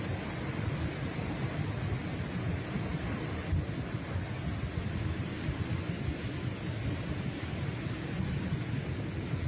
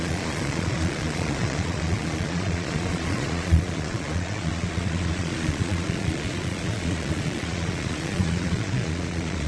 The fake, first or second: second